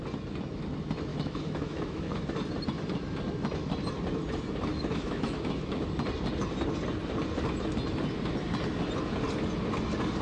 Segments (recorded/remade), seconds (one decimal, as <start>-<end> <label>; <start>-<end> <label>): 0.0-1.1 recorded; 1.1-2.2 remade; 2.2-4.7 recorded; 4.7-5.8 remade; 5.8-10.2 recorded